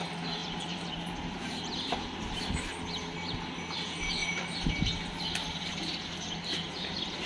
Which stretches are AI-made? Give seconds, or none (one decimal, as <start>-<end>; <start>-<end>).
0.4-2.7; 4.2-4.7